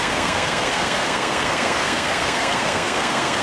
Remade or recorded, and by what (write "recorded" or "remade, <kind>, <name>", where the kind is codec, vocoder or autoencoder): remade, codec, SNAC